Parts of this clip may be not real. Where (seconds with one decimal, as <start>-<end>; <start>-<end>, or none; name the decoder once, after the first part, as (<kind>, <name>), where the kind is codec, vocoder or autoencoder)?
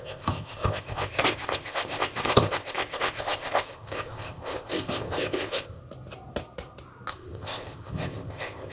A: 0.0-5.8 (codec, ZipCodec); 7.1-8.7